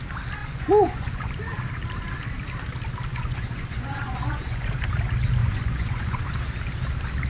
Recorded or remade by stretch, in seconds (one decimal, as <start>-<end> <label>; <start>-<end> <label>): 0.0-0.4 recorded; 0.4-1.3 remade; 1.3-3.1 recorded; 3.1-4.7 remade; 4.7-5.4 recorded; 5.4-6.3 remade; 6.3-7.3 recorded